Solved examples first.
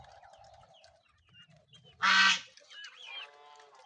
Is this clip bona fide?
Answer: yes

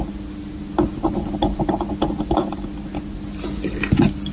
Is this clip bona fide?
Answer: yes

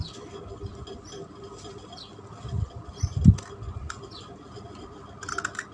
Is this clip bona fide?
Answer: yes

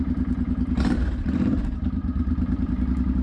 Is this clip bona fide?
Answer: no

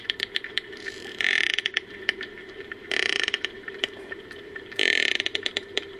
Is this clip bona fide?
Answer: no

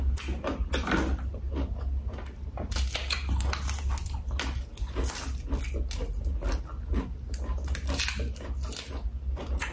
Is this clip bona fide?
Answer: yes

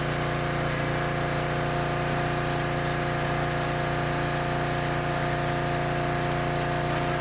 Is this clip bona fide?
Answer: yes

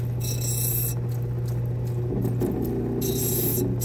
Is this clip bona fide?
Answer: yes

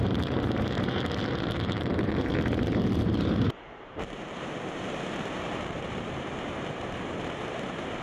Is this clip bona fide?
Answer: no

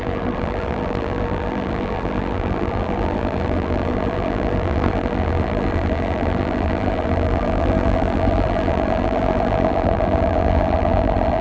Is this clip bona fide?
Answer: no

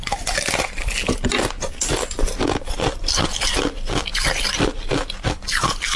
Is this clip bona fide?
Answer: yes